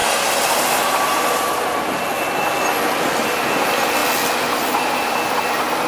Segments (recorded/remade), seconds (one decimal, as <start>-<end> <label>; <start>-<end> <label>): 0.0-5.9 recorded

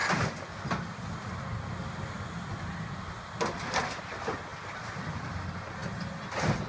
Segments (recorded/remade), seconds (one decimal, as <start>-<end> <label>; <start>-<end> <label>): 0.0-6.7 recorded

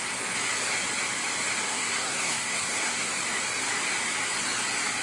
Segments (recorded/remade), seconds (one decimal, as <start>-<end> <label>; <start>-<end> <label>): 0.0-1.7 recorded; 1.7-3.1 remade; 3.1-5.0 recorded

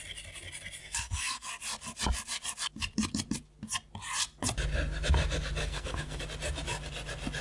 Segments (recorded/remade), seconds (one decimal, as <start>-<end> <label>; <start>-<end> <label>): 0.0-0.8 recorded; 0.8-1.5 remade; 1.5-5.6 recorded; 5.6-6.2 remade; 6.2-7.4 recorded

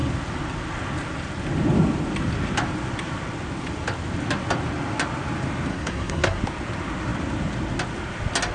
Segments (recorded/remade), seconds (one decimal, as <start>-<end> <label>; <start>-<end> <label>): 0.0-5.7 recorded; 5.7-6.4 remade; 6.4-8.5 recorded